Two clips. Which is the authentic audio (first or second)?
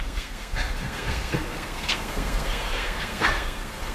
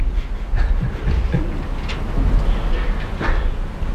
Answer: second